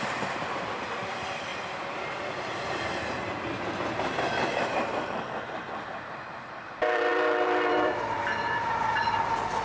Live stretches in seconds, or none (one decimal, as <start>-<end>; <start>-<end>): 1.5-4.8